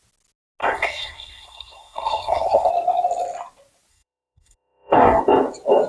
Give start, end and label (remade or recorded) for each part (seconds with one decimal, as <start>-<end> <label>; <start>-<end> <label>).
0.0-0.6 recorded; 0.6-2.7 remade; 2.7-3.9 recorded; 3.9-5.2 remade; 5.2-5.9 recorded